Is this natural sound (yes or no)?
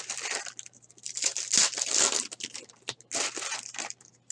yes